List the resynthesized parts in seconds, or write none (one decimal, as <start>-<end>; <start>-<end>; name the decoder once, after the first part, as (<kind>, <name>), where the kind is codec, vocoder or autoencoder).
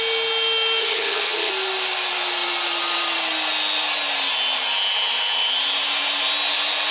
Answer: 0.8-1.5 (vocoder, HiFi-GAN)